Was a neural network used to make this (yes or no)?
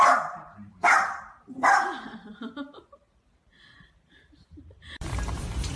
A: yes